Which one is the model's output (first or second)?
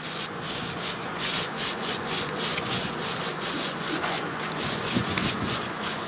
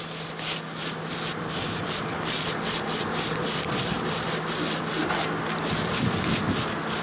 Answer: first